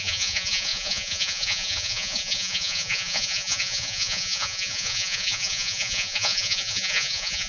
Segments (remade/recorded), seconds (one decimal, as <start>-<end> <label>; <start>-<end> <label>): 0.0-7.5 remade

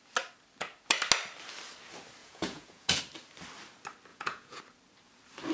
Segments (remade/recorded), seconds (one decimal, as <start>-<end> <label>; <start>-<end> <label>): 0.0-2.2 recorded; 2.2-3.0 remade; 3.0-4.1 recorded; 4.1-4.6 remade; 4.6-5.5 recorded

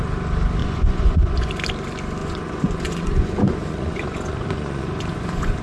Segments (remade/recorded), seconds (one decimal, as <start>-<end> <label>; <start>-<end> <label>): 0.0-0.6 recorded; 0.6-1.5 remade; 1.5-2.2 recorded; 2.2-5.6 remade